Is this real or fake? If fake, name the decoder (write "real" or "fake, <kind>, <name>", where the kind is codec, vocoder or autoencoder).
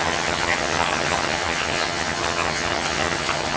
fake, vocoder, HiFi-GAN